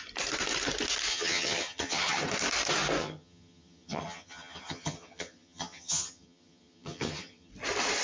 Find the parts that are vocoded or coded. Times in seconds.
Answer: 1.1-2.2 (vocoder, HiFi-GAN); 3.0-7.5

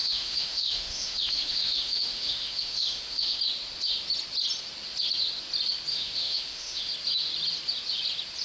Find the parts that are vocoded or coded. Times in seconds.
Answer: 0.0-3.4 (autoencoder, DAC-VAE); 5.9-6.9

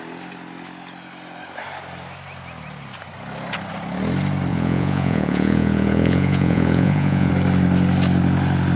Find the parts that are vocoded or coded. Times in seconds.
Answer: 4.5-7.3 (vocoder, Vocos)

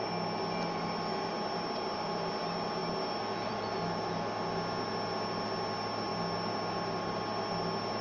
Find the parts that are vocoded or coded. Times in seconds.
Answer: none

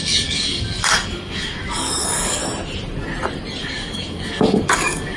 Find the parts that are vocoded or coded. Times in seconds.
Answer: 0.0-2.4 (codec, DAC); 3.6-5.2